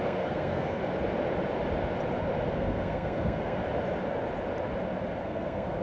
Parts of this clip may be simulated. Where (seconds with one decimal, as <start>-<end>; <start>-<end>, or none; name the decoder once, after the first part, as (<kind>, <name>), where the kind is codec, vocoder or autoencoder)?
0.0-0.8 (codec, SNAC); 2.5-3.6; 5.2-5.8